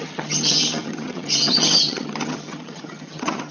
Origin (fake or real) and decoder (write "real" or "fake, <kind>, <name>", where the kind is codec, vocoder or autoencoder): fake, vocoder, HiFi-GAN